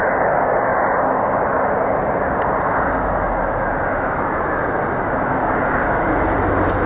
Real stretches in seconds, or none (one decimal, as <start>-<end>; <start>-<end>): 0.0-6.9